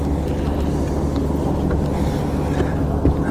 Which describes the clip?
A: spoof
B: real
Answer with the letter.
B